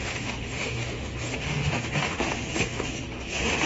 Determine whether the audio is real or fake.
fake